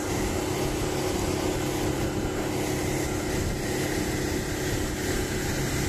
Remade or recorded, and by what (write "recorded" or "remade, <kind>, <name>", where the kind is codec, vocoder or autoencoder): recorded